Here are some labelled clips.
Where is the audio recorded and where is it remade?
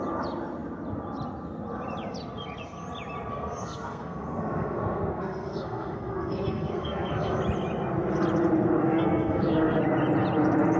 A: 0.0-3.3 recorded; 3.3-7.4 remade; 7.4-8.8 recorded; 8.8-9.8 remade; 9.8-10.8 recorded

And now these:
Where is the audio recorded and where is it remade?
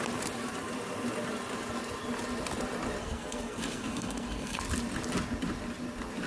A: 0.0-3.0 recorded; 3.0-4.6 remade; 4.6-6.3 recorded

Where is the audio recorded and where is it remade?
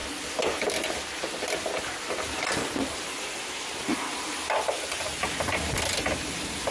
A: 0.0-6.7 recorded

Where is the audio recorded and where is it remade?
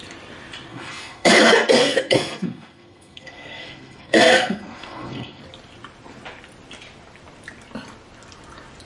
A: 0.0-0.7 recorded; 0.7-5.4 remade; 5.4-8.9 recorded